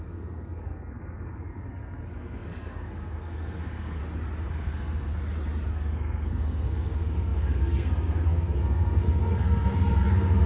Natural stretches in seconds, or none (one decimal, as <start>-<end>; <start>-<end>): 4.0-4.5; 5.1-5.7

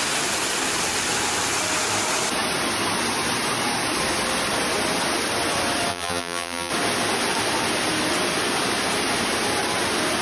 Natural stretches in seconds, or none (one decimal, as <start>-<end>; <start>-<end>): 0.0-5.9; 6.7-10.2